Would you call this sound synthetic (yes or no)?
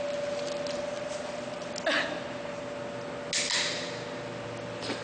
no